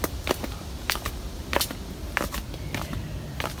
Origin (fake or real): real